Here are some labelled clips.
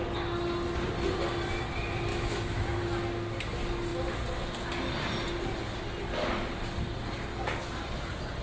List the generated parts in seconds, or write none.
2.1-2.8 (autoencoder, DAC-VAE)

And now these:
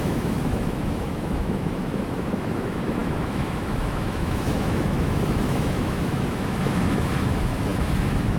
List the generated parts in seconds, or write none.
0.0-8.4 (autoencoder, DAC-VAE)